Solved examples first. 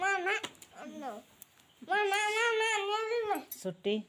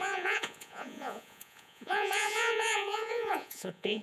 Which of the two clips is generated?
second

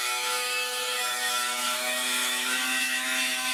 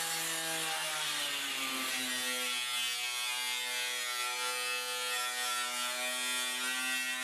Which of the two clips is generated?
first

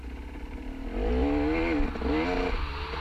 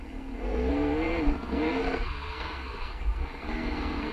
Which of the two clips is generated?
second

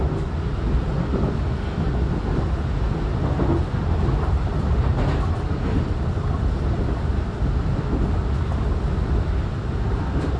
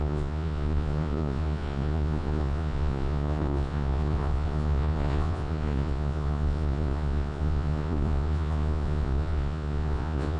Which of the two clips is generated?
second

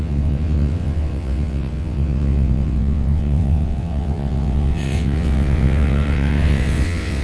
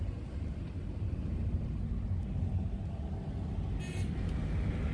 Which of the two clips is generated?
first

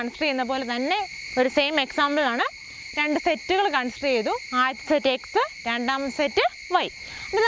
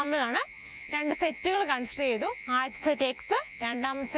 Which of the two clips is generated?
second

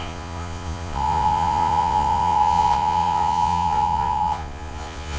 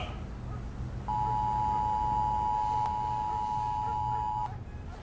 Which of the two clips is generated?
first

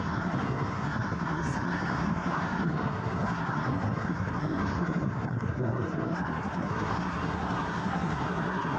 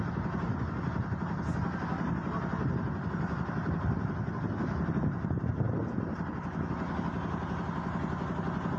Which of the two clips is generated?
first